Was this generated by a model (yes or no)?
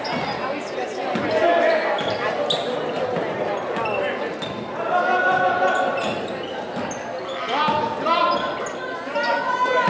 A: no